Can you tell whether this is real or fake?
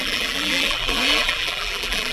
fake